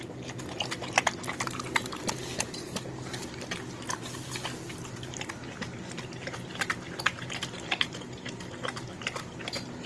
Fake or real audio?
real